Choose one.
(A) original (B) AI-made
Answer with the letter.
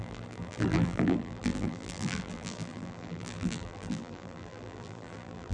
B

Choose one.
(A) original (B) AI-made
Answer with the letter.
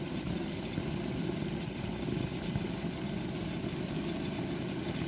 A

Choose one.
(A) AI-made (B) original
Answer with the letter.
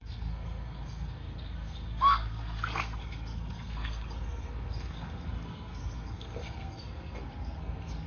A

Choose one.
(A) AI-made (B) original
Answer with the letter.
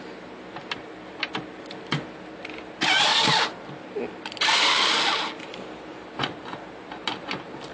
B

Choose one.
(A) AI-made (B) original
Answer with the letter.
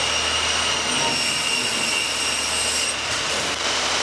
B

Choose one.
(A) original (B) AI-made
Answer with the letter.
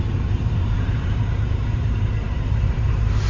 B